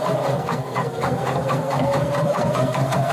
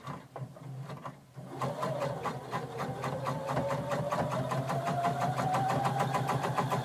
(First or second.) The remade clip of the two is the first